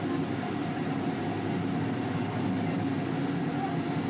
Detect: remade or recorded recorded